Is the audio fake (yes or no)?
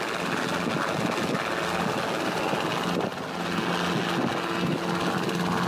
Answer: no